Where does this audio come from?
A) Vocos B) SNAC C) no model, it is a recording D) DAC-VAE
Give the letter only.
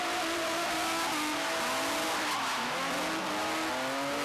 C